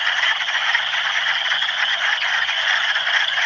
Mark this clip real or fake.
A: fake